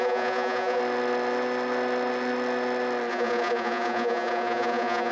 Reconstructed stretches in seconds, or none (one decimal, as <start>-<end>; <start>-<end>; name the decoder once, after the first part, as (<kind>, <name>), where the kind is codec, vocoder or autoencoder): 0.0-0.8 (vocoder, Vocos); 3.1-5.1